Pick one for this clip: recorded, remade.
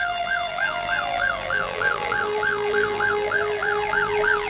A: remade